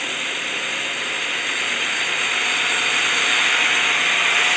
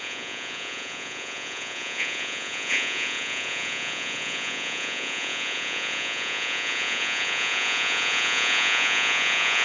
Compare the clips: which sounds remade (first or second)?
second